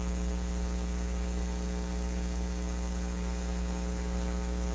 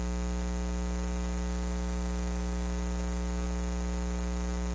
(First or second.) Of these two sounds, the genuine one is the second